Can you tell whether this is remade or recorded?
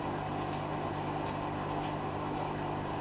recorded